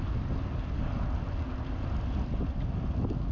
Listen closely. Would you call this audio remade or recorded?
recorded